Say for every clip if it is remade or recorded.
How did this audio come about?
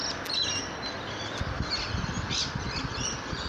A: recorded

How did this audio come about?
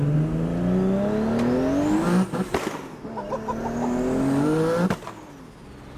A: recorded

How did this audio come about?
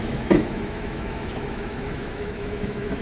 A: remade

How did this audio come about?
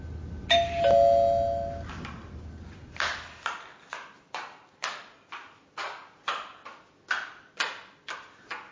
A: recorded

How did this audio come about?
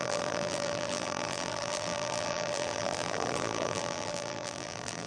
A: remade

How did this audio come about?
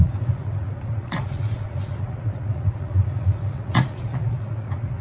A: remade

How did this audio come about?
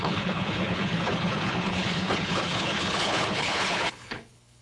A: remade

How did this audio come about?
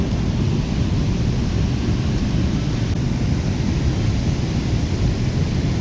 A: recorded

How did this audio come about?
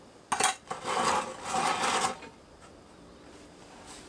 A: recorded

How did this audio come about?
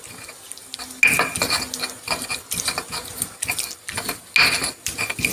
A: recorded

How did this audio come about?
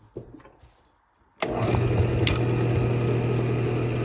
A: recorded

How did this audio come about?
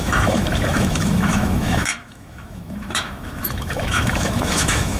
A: remade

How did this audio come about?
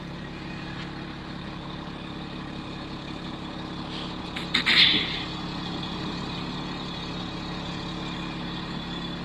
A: recorded